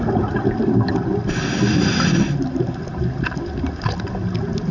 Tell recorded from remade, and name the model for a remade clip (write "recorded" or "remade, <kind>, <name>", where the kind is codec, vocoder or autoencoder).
recorded